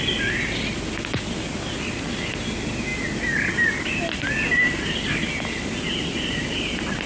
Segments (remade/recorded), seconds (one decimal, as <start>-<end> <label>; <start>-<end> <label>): 0.0-7.1 recorded